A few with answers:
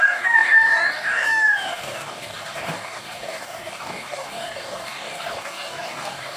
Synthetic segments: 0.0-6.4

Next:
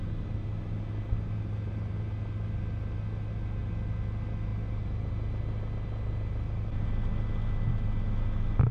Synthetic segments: none